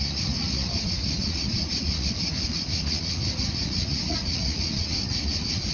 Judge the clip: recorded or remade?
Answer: remade